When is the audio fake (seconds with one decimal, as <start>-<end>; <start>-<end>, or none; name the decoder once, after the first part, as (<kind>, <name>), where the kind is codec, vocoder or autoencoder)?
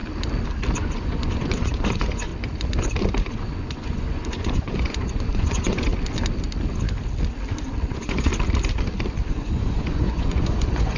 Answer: 0.8-2.3 (vocoder, Vocos); 3.3-5.9; 7.9-8.3; 9.3-11.0